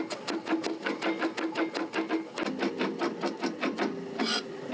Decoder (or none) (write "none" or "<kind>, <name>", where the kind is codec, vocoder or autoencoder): none